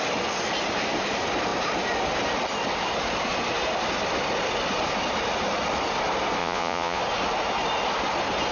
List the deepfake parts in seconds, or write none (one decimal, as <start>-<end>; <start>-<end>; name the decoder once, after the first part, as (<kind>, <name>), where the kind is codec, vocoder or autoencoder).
6.4-7.0 (vocoder, Vocos)